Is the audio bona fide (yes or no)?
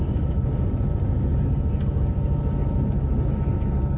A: yes